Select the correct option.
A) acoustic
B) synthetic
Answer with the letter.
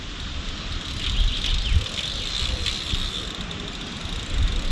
A